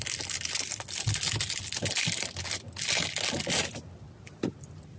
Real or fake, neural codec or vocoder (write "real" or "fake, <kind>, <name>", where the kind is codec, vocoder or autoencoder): real